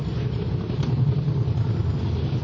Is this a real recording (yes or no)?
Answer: yes